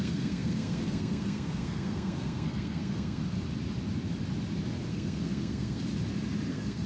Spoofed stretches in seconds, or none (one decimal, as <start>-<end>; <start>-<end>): 0.0-3.2; 4.9-5.8; 6.5-6.9